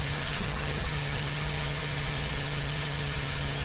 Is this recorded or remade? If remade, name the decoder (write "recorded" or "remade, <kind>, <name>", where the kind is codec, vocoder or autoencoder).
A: remade, vocoder, HiFi-GAN